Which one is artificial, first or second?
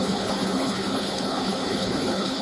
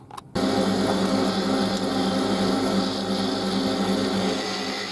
first